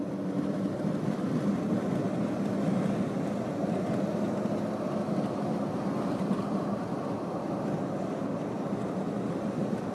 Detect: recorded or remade recorded